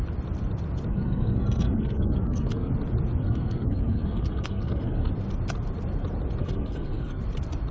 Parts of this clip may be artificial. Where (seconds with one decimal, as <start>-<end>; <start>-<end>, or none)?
0.9-2.7; 3.2-5.1; 6.4-7.2